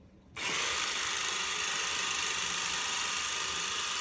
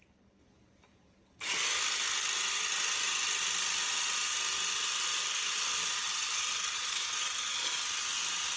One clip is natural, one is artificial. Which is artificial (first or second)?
first